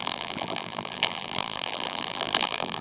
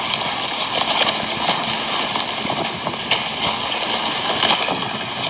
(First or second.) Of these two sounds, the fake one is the first